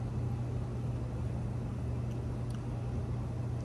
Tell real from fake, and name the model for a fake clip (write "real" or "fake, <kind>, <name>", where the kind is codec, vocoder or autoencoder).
real